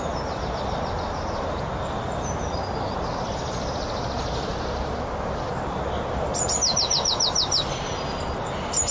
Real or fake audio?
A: real